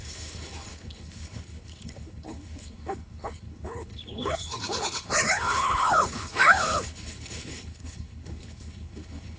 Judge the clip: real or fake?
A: fake